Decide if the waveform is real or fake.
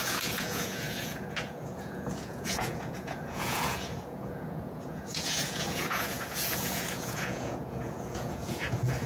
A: fake